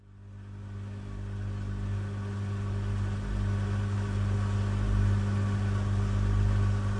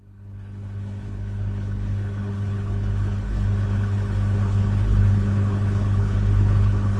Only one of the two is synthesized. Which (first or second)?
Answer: second